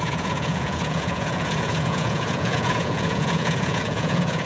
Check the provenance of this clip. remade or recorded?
remade